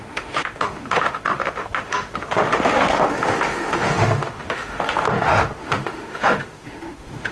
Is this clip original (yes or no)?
no